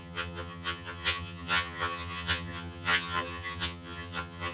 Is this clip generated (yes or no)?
yes